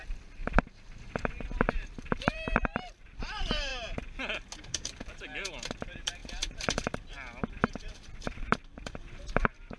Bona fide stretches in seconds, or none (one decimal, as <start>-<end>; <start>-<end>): 0.4-1.6; 3.7-4.7